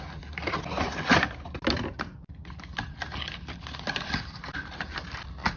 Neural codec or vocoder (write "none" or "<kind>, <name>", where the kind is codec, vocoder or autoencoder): none